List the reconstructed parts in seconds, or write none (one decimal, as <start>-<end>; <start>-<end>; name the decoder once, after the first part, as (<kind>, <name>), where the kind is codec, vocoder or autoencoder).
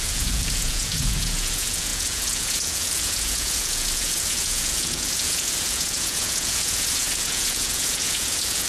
0.0-8.7 (vocoder, Vocos)